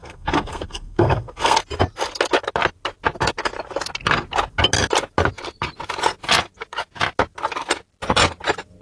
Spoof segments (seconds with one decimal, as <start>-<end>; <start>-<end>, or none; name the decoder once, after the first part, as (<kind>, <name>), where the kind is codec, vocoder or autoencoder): 0.0-1.6 (codec, SNAC)